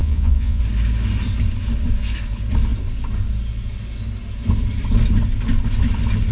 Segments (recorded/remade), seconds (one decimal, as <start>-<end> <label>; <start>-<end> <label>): 0.0-0.6 remade; 0.6-6.3 recorded